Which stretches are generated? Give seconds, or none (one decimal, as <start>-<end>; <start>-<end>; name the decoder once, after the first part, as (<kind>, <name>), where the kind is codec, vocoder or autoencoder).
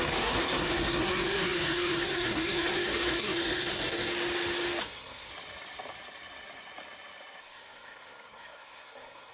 0.0-4.1 (codec, SNAC); 4.8-5.3; 7.4-9.3